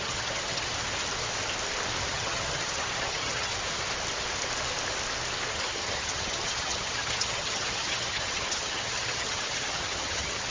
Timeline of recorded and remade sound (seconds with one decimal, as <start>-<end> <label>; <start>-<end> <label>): 0.0-0.7 remade; 0.7-2.1 recorded; 2.1-3.5 remade; 3.5-5.5 recorded; 5.5-10.5 remade